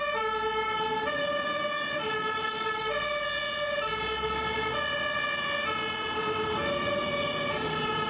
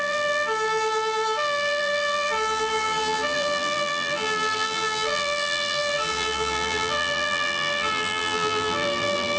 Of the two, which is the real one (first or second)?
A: first